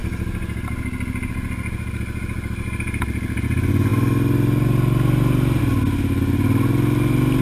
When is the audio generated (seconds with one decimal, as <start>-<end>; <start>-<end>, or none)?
none